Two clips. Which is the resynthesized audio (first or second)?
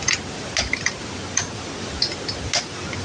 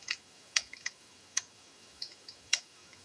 second